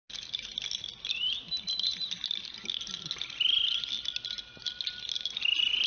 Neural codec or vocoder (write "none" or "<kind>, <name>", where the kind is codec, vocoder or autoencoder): none